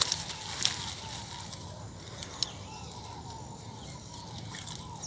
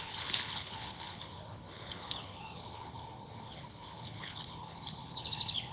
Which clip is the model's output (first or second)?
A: second